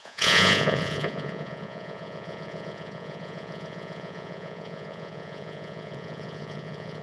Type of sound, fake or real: fake